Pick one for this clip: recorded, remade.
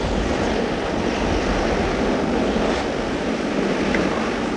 recorded